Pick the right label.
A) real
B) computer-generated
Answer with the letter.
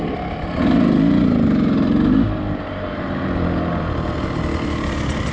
A